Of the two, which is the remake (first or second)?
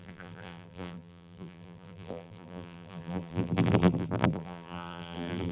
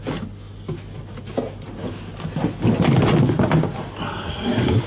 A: first